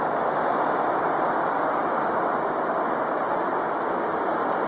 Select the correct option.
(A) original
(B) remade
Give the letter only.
A